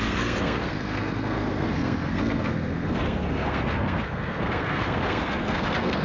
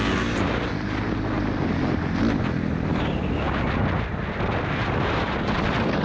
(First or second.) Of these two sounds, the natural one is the second